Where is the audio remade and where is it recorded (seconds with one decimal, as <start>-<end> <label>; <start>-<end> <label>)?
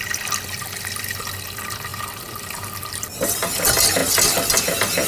0.0-1.9 recorded; 1.9-3.5 remade; 3.5-5.1 recorded